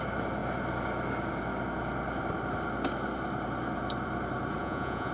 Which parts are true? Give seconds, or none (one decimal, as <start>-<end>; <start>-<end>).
0.0-4.6